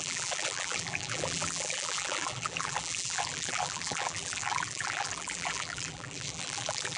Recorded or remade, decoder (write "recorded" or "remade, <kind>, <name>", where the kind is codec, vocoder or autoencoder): remade, vocoder, BigVGAN v2